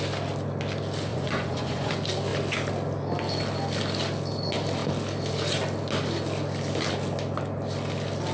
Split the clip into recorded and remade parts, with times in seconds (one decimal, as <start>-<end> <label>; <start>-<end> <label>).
0.0-1.1 recorded; 1.1-1.9 remade; 1.9-8.3 recorded